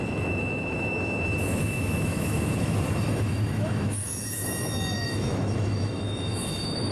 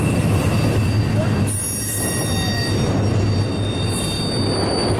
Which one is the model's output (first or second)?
first